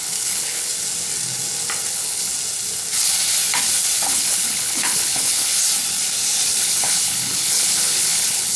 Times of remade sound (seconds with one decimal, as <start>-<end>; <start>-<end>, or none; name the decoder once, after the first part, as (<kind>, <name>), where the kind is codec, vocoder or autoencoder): 0.0-0.7 (codec, HILCodec); 1.9-2.3; 4.1-5.5; 6.6-8.6